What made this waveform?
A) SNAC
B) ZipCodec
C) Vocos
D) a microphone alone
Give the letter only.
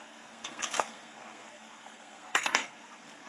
A